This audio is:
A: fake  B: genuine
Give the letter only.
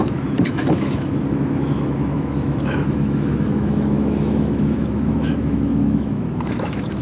A